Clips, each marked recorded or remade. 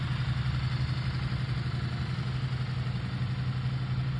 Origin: recorded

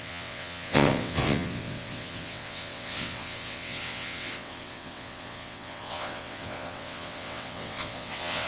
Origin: remade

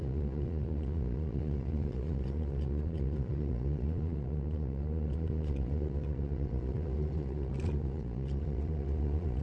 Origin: remade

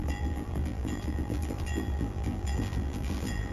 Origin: remade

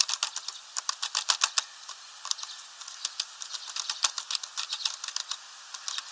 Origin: recorded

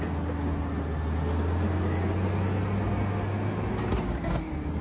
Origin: recorded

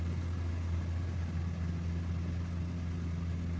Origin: recorded